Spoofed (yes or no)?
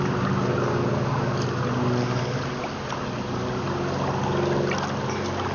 no